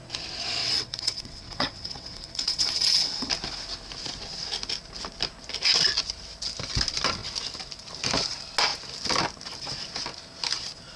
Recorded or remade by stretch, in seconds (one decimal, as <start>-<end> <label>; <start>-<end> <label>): 0.0-0.6 recorded; 0.6-3.3 remade; 3.3-11.0 recorded